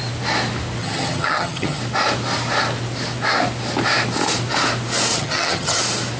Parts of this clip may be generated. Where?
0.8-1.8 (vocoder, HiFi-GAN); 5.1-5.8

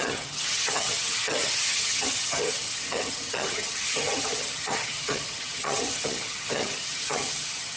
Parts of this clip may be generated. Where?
0.0-7.8 (vocoder, HiFi-GAN)

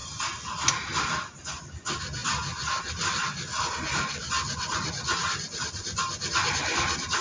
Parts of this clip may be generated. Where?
none